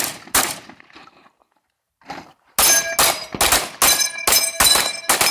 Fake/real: real